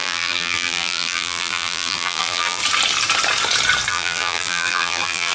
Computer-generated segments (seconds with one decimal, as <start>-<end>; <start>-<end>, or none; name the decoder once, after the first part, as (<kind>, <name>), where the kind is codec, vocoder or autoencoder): 0.0-2.6 (vocoder, BigVGAN v2); 3.9-5.3